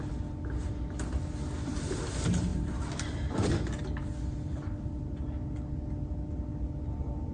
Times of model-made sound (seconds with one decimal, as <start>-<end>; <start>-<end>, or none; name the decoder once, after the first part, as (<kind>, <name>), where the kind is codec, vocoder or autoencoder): none